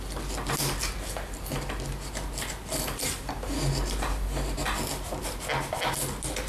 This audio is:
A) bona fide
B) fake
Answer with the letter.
A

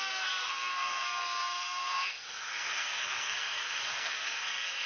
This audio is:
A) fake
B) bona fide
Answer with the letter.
A